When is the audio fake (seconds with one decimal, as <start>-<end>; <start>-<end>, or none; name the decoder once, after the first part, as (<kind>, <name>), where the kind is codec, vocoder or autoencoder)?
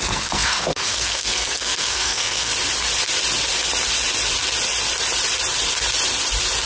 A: 0.0-2.5 (codec, SNAC)